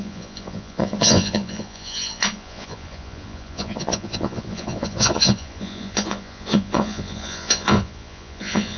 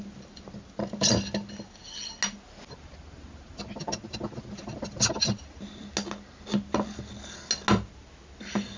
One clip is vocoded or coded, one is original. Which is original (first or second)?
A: second